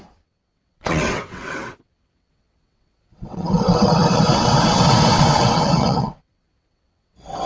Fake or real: fake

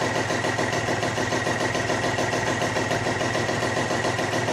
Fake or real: real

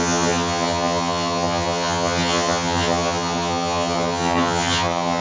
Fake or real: fake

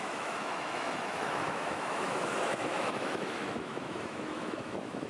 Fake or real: fake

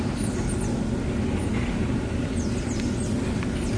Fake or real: real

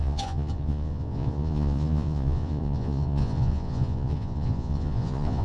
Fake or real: fake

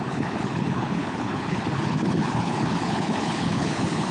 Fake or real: fake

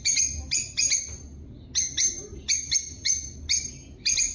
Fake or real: real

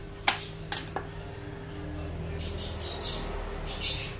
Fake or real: real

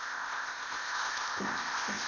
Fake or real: fake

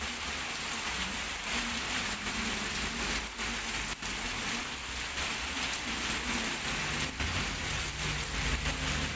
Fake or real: real